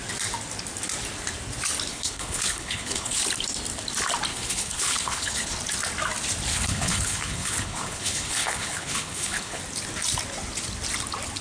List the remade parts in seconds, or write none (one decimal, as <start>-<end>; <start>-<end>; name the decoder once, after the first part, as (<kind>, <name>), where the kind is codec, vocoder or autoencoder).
1.9-3.2 (codec, HILCodec); 4.3-5.6; 6.5-9.6